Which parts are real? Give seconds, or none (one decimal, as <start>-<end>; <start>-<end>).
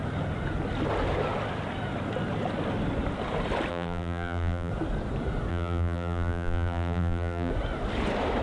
0.0-3.7; 4.7-5.5; 7.5-8.4